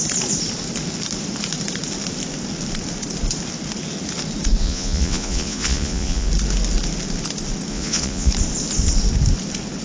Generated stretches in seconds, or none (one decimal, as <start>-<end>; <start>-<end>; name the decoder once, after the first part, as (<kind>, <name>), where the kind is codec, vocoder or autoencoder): 4.6-6.3 (vocoder, Vocos); 7.7-8.3